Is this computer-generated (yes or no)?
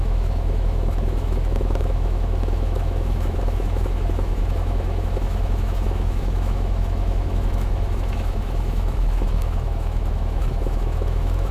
yes